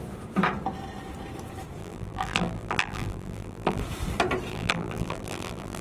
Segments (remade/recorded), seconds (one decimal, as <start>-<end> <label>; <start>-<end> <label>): 0.0-1.8 recorded; 1.8-3.8 remade; 3.8-4.5 recorded; 4.5-5.8 remade